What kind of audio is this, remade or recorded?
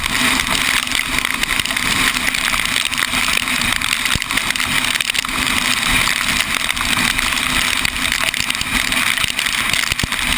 recorded